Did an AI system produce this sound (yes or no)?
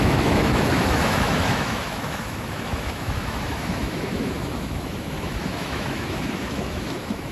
yes